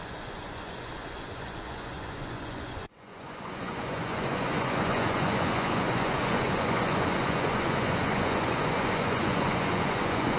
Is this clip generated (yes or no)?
yes